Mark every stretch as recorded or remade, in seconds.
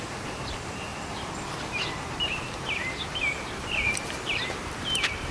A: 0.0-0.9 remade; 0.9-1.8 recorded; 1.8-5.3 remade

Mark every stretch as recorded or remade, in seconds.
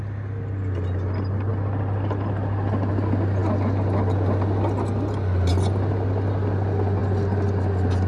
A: 0.0-8.1 recorded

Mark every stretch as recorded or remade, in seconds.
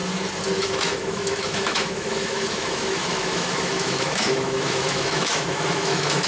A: 0.0-0.6 recorded; 0.6-6.3 remade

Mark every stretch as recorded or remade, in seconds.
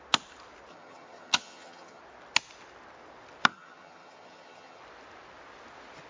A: 0.0-0.7 recorded; 0.7-2.0 remade; 2.0-3.5 recorded; 3.5-4.8 remade; 4.8-6.1 recorded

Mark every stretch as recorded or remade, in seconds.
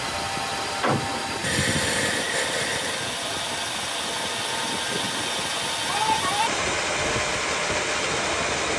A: 0.0-8.8 recorded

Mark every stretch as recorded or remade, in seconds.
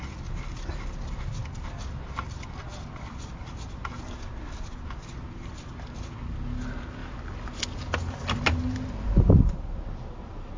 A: 0.0-10.6 recorded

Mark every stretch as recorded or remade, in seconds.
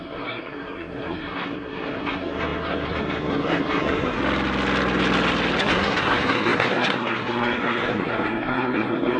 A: 0.0-4.2 remade; 4.2-5.6 recorded; 5.6-9.2 remade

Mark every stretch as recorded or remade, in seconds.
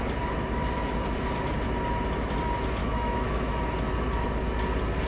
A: 0.0-2.8 recorded; 2.8-3.6 remade; 3.6-5.1 recorded